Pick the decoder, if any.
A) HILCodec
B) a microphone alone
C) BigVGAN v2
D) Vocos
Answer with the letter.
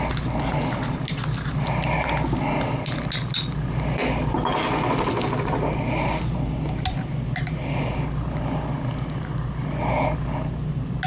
B